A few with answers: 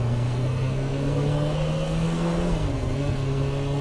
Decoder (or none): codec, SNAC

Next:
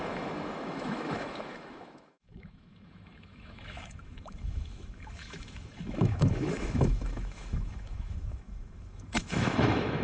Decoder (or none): autoencoder, DAC-VAE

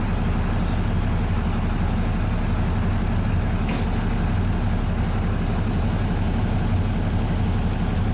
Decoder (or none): none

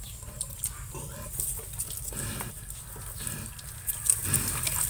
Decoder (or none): none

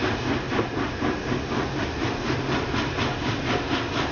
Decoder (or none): none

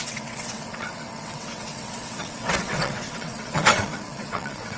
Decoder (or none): vocoder, WaveNeXt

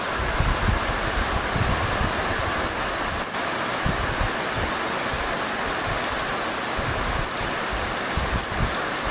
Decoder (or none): none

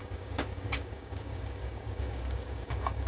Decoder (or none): codec, DAC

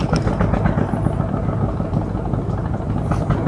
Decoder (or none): none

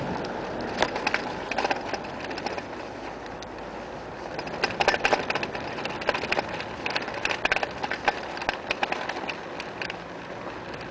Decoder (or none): none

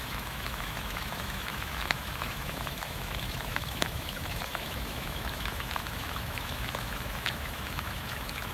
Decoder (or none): autoencoder, DAC-VAE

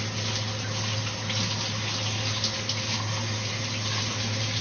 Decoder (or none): none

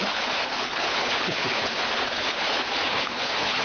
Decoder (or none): codec, HILCodec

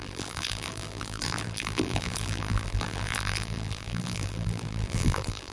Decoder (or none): vocoder, BigVGAN v2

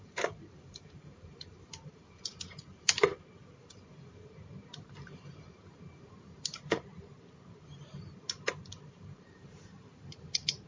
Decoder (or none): vocoder, BigVGAN v2